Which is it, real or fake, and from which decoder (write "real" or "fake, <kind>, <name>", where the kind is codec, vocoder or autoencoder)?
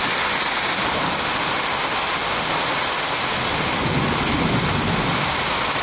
real